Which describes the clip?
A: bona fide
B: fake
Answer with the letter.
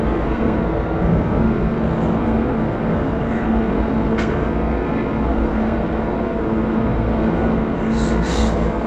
B